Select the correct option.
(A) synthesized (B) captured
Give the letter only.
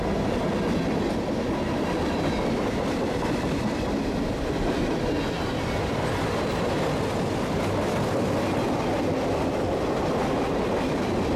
B